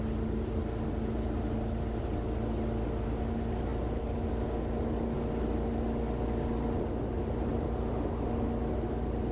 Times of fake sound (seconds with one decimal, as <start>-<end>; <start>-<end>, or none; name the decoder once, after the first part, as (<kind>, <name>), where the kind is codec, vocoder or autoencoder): none